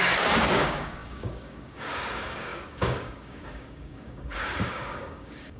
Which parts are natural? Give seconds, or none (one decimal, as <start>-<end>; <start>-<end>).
none